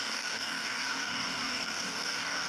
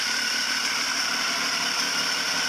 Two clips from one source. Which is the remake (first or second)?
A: first